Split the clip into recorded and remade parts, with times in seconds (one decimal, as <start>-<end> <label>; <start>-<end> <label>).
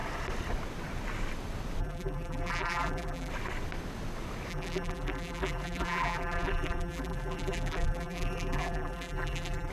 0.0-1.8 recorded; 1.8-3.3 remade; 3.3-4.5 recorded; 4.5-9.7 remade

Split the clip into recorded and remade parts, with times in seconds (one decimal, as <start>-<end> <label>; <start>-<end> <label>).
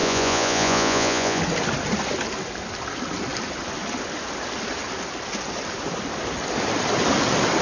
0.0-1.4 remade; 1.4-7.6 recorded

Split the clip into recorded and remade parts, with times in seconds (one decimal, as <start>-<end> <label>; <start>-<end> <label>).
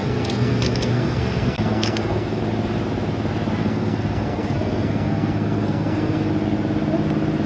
0.0-2.4 remade; 2.4-3.6 recorded; 3.6-6.3 remade; 6.3-7.5 recorded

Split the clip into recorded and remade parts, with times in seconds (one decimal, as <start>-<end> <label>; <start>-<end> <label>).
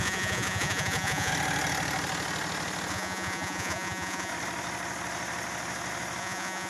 0.0-1.3 remade; 1.3-2.9 recorded; 2.9-4.3 remade; 4.3-6.2 recorded; 6.2-6.7 remade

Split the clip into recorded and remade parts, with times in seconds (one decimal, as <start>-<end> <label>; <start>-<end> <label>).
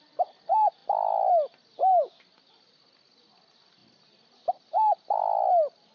0.0-5.9 recorded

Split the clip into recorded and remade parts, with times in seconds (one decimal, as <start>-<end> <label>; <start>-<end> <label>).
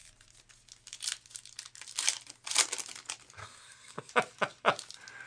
0.0-3.4 recorded; 3.4-4.1 remade; 4.1-5.3 recorded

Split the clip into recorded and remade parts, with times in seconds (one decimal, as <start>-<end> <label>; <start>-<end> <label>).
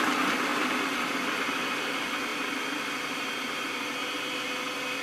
0.0-2.3 recorded; 2.3-3.9 remade; 3.9-5.0 recorded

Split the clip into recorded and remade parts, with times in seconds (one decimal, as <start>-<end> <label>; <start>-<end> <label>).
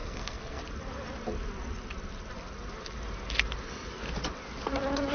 0.0-0.6 remade; 0.6-5.1 recorded